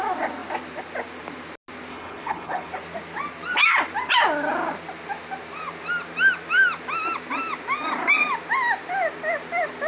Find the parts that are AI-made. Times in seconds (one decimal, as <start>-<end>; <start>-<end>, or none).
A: 1.9-2.7